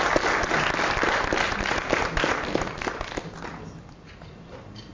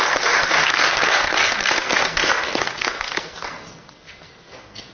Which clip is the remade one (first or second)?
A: second